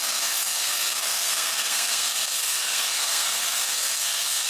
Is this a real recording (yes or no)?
no